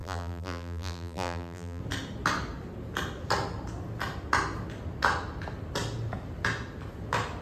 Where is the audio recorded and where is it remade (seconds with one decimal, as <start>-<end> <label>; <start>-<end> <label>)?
0.0-1.8 remade; 1.8-7.4 recorded